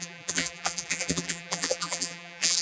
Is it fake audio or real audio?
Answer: fake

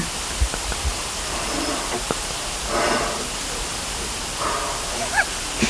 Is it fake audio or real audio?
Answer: fake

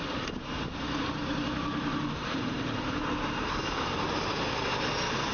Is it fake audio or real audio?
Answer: fake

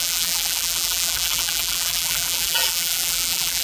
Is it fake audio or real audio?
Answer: fake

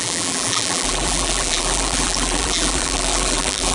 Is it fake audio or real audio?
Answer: fake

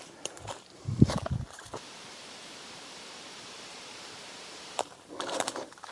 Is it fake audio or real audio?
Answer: fake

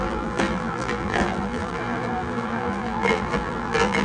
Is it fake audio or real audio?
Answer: fake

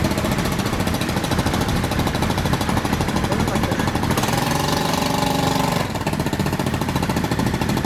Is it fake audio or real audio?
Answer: fake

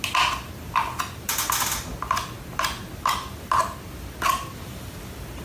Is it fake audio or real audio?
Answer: real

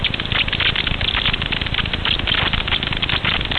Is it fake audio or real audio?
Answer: fake